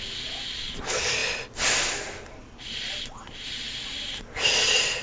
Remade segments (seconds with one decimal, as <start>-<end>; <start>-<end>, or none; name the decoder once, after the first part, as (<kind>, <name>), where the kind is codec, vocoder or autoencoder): none